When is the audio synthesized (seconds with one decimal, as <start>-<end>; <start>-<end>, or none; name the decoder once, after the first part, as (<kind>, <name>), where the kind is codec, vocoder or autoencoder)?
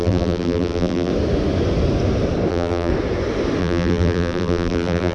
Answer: 0.0-1.1 (vocoder, BigVGAN v2); 2.5-2.9; 3.6-5.1